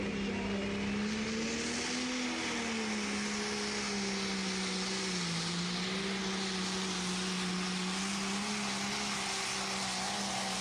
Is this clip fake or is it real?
real